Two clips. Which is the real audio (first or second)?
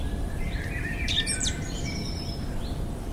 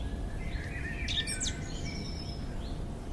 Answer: second